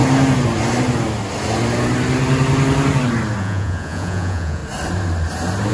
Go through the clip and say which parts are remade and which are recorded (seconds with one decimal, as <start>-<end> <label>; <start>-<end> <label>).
0.0-3.4 recorded; 3.4-4.6 remade; 4.6-5.7 recorded